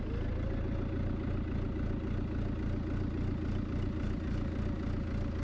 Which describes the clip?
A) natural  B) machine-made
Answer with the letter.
A